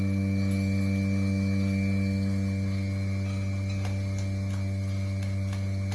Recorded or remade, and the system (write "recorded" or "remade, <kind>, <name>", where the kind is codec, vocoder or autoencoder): recorded